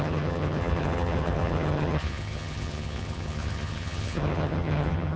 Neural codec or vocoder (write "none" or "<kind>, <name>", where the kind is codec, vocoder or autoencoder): vocoder, HiFi-GAN